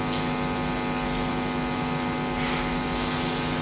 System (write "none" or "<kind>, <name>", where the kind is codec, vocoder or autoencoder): none